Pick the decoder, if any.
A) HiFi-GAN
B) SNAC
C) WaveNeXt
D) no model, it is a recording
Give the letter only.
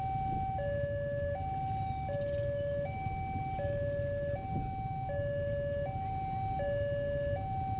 D